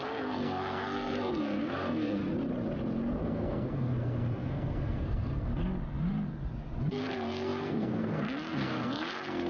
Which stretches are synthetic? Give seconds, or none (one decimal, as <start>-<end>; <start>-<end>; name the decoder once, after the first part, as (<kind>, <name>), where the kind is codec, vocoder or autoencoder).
0.0-2.2 (codec, SNAC); 3.2-5.5; 6.8-9.5